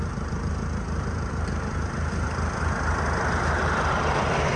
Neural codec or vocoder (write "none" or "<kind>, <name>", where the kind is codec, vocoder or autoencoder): vocoder, BigVGAN v2